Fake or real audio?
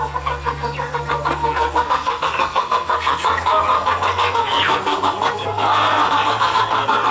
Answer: fake